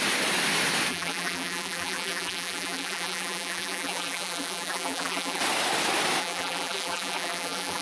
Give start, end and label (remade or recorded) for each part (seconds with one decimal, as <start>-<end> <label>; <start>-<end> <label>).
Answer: 0.0-0.9 recorded; 0.9-5.4 remade; 5.4-6.2 recorded; 6.2-7.8 remade

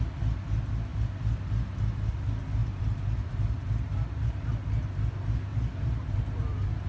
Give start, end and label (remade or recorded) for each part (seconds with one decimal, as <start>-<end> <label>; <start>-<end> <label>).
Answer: 0.0-2.6 recorded; 2.6-4.5 remade; 4.5-5.5 recorded; 5.5-6.9 remade